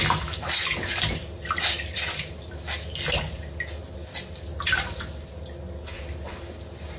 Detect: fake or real real